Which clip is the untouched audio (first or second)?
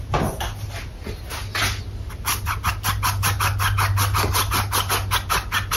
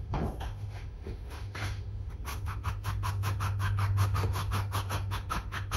first